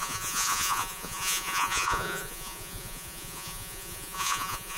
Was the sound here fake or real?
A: fake